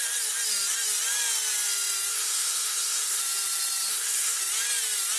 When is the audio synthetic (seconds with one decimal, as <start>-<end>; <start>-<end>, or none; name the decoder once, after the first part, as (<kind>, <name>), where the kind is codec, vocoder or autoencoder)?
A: 2.1-3.2 (codec, SNAC); 3.9-4.4